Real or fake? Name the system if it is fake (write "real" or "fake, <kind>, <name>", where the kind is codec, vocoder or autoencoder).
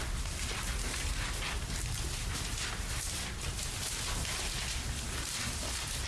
real